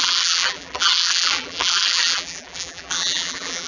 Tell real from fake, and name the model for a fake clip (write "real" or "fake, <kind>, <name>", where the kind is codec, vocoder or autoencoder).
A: fake, vocoder, BigVGAN v2